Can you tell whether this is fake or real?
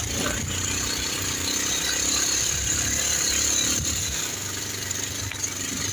real